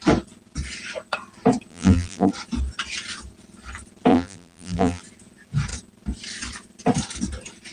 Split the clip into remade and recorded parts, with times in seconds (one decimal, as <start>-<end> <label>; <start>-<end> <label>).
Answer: 0.0-1.7 recorded; 1.7-2.3 remade; 2.3-4.1 recorded; 4.1-5.0 remade; 5.0-7.7 recorded